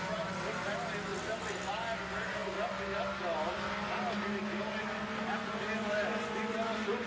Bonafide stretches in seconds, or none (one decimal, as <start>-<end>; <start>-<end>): 0.0-7.1